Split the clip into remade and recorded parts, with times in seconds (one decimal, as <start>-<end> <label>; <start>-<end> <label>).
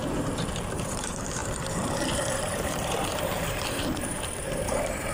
0.0-5.1 remade